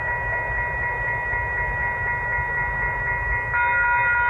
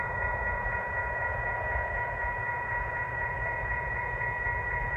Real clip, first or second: first